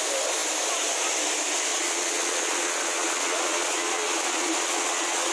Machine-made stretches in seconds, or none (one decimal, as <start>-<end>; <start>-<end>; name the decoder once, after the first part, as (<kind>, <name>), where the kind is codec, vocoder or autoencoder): 1.7-5.3 (vocoder, Vocos)